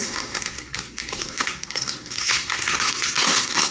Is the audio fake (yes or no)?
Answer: yes